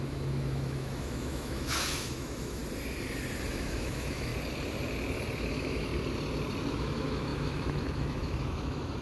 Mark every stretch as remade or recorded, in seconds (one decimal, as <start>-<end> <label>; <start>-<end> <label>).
0.0-2.6 remade; 2.6-3.5 recorded; 3.5-4.3 remade; 4.3-5.5 recorded; 5.5-5.9 remade; 5.9-6.7 recorded; 6.7-9.0 remade